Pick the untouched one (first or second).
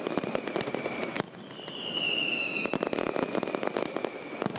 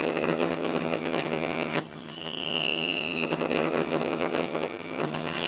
first